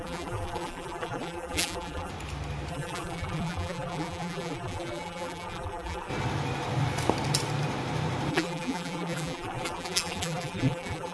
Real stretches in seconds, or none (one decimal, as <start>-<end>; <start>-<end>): 2.1-2.7; 6.1-8.3